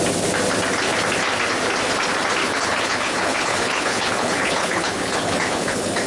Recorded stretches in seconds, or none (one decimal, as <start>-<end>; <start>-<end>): 0.0-2.4